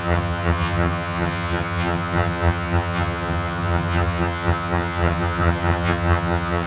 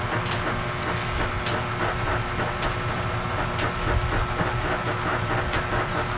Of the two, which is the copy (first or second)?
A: first